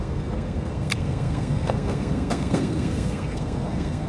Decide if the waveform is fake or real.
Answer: fake